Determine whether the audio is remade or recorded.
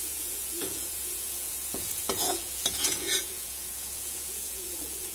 remade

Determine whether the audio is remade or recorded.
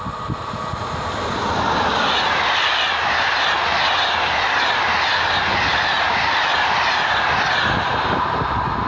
recorded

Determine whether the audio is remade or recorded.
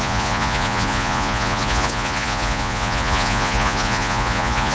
remade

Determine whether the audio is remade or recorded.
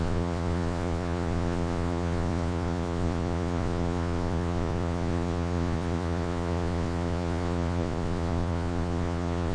remade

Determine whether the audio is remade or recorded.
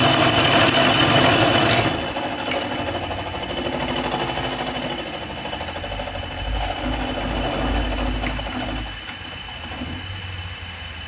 recorded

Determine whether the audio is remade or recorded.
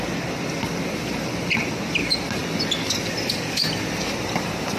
recorded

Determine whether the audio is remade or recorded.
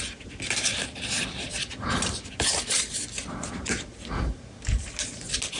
recorded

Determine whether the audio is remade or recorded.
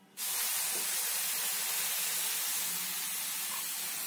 recorded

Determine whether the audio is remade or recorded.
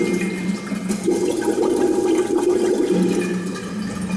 recorded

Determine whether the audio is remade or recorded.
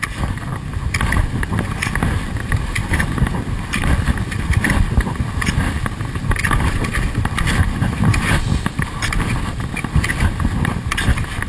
recorded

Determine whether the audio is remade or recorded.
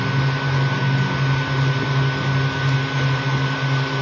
recorded